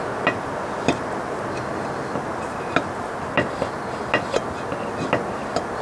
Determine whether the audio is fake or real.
real